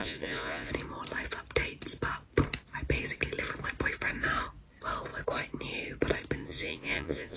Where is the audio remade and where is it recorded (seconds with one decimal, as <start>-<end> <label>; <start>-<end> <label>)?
0.0-0.7 remade; 0.7-6.4 recorded; 6.4-7.4 remade